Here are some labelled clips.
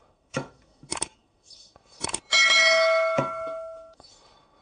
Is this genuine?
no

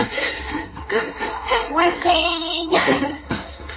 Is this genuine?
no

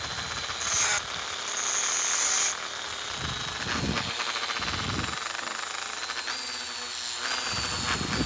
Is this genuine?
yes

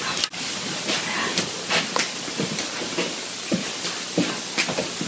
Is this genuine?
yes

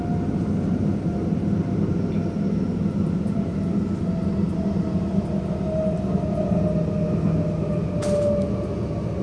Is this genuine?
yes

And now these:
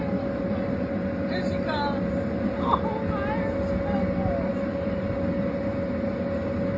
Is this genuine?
yes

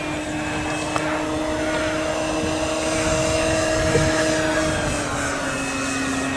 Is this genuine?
yes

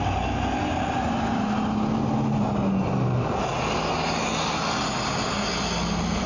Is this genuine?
yes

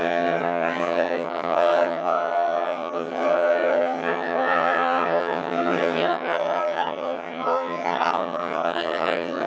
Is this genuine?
no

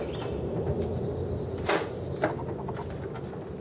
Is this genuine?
yes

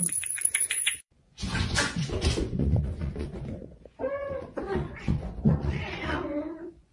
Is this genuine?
no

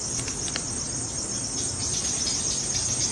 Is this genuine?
yes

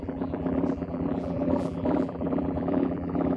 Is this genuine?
no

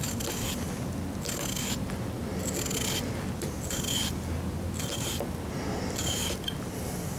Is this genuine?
yes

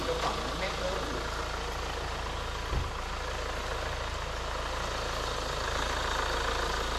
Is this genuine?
yes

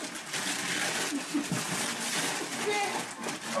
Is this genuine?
yes